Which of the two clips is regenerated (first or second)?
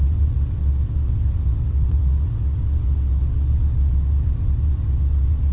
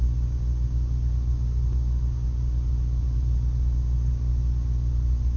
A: first